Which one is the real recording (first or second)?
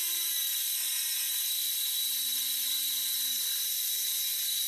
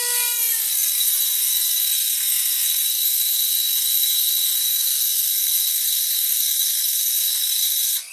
first